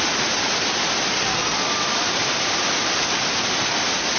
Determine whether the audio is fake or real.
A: real